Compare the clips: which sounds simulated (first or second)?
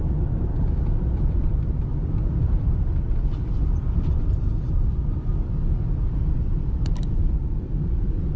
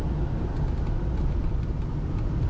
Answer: first